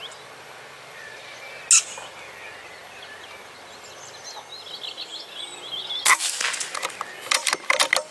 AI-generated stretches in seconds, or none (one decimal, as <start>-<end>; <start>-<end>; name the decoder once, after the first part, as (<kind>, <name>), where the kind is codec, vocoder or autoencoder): none